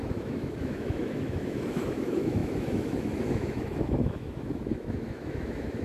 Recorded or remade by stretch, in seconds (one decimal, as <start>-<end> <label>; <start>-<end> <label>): 0.0-5.8 remade